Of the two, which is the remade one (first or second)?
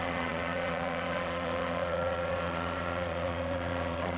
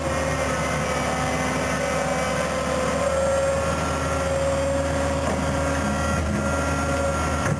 first